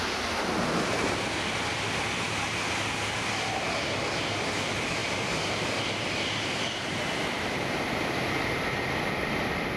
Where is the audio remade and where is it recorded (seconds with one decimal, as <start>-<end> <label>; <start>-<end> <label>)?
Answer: 0.0-9.8 recorded